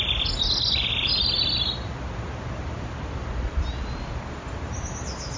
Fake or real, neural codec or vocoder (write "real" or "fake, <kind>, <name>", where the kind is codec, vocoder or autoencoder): real